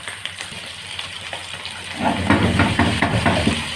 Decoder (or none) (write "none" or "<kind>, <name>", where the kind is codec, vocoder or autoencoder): vocoder, BigVGAN v2